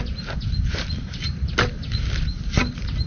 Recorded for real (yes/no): yes